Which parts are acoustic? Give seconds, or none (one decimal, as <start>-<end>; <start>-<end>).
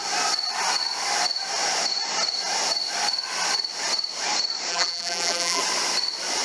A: 0.0-4.7; 5.6-6.4